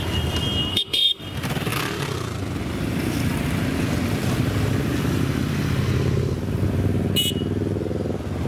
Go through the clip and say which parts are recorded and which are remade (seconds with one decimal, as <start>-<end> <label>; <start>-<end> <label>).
0.0-0.7 recorded; 0.7-1.2 remade; 1.2-8.5 recorded